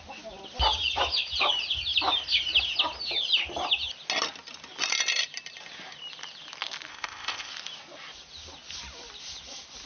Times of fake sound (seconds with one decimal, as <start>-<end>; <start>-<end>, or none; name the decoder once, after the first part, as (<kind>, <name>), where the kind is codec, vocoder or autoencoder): 6.9-7.5 (codec, ZipCodec)